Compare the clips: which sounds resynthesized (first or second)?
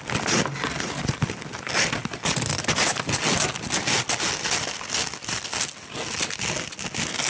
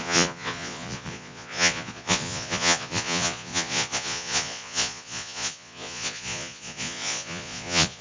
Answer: second